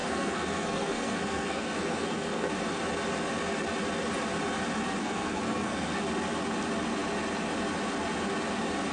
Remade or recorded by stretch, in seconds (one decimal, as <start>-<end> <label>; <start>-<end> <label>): 0.0-2.5 remade; 2.5-5.0 recorded; 5.0-6.0 remade; 6.0-8.9 recorded